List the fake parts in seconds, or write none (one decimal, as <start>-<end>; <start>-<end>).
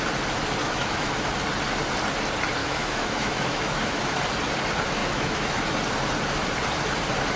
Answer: 0.6-1.1; 2.6-4.2; 5.0-5.6